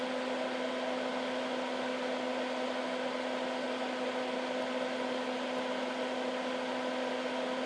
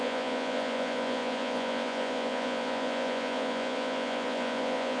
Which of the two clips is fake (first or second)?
second